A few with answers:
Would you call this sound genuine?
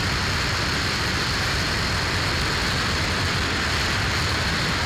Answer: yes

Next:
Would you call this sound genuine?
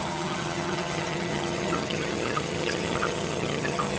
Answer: no